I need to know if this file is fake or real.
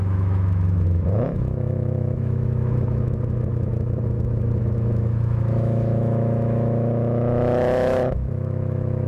fake